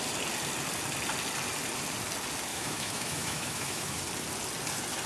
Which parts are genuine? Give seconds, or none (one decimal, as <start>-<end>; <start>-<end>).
0.0-2.5; 4.0-5.1